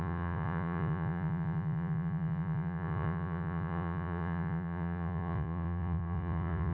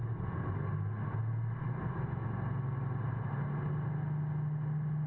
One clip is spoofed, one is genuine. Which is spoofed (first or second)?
first